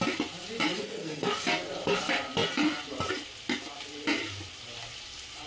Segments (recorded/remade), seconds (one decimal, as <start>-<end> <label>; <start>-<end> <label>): 0.0-0.8 recorded; 0.8-1.3 remade; 1.3-5.5 recorded